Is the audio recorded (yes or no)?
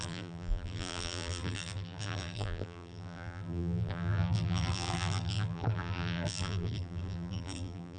no